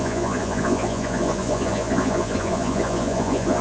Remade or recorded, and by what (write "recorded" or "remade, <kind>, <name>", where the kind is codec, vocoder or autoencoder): remade, vocoder, Vocos